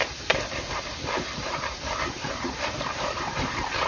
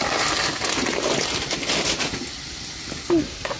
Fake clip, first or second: first